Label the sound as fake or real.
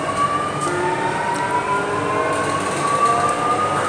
real